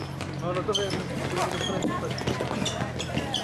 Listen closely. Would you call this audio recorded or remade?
recorded